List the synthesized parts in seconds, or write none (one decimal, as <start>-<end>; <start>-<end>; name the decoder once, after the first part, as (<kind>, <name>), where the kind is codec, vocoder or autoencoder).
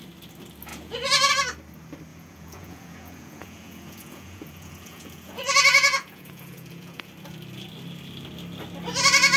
0.7-1.3 (vocoder, Vocos); 2.1-7.1